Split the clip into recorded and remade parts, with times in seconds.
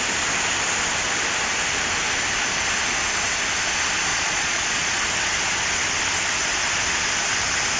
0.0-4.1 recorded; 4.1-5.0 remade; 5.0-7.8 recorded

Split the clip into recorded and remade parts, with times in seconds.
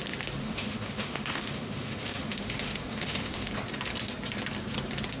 0.0-0.4 recorded; 0.4-3.5 remade; 3.5-5.2 recorded